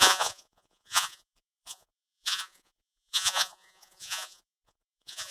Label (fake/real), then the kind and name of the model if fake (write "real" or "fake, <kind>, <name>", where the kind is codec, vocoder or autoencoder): fake, vocoder, Vocos